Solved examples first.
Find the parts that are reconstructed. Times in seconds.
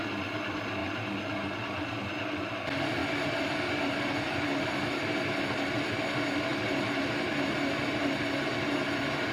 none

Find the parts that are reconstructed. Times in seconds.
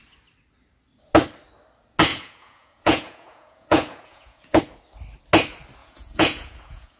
2.1-4.6 (vocoder, Vocos); 5.8-7.0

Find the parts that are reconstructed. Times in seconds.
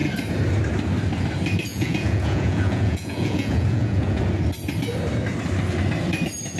1.7-4.2 (vocoder, Vocos)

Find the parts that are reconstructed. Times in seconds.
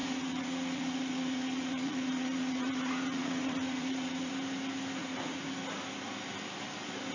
0.0-4.3 (vocoder, Vocos); 5.0-5.5